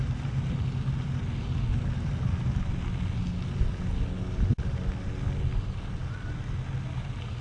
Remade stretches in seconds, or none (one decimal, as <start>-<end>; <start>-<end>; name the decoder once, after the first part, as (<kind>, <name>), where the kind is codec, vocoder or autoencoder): 4.5-5.0 (vocoder, BigVGAN v2)